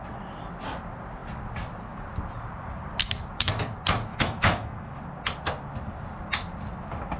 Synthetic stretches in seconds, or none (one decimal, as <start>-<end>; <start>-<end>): 4.1-5.0